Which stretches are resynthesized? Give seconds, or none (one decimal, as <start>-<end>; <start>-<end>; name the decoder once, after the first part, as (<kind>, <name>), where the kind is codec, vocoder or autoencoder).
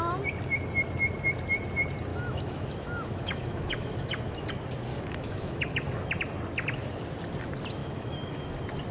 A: 2.1-4.5 (autoencoder, DAC-VAE); 4.9-6.1; 7.8-8.5